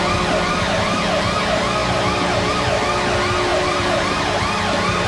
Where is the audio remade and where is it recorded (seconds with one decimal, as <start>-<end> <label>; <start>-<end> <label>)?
0.0-3.5 recorded; 3.5-4.2 remade; 4.2-5.1 recorded